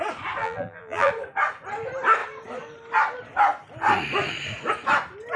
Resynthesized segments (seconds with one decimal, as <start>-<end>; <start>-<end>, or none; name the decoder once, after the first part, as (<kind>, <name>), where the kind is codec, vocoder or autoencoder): 0.4-1.1 (vocoder, BigVGAN v2)